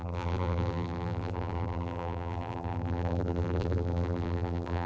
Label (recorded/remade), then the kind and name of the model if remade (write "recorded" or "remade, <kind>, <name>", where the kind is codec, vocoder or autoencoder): remade, vocoder, BigVGAN v2